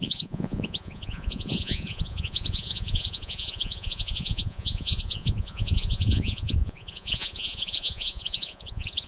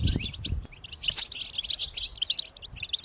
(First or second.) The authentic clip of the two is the second